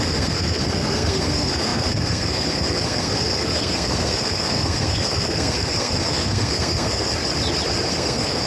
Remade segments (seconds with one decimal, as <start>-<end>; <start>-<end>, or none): 0.0-7.1; 7.9-8.5